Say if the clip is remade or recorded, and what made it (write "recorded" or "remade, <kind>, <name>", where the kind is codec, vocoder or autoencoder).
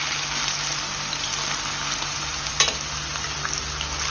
recorded